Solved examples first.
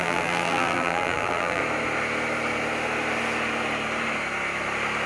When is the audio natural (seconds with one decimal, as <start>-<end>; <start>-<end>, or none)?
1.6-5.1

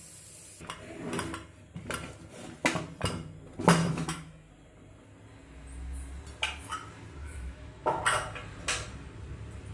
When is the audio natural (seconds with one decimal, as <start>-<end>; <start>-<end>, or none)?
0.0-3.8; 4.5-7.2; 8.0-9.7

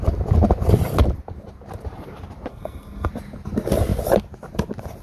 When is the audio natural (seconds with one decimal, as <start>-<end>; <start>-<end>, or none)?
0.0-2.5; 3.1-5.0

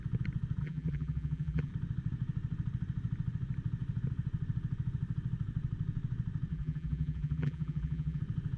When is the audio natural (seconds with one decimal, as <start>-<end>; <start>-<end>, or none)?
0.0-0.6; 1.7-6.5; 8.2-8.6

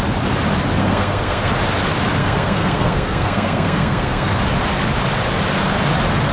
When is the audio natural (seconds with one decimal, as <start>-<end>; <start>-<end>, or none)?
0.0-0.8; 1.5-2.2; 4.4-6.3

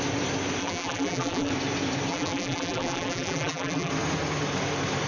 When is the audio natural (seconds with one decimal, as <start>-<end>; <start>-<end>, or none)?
0.0-0.6; 1.5-2.1; 3.9-5.1

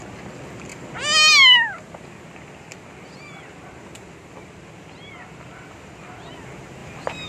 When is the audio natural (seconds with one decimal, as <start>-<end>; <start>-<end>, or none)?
0.0-7.3